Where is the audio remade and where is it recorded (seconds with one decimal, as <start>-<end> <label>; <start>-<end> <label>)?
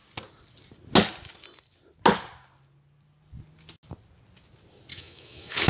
0.0-4.9 recorded; 4.9-5.7 remade